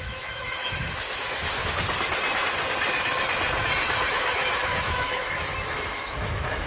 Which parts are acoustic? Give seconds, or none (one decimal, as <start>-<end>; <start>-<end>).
1.6-4.1